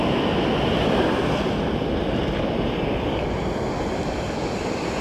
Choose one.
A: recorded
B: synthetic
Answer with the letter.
A